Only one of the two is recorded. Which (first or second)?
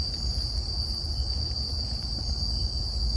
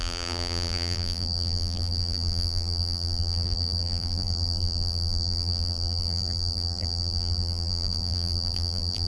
first